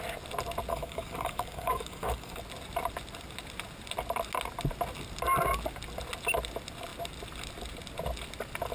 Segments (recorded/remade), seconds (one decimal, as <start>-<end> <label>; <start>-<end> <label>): 0.0-0.7 recorded; 0.7-2.4 remade; 2.4-8.7 recorded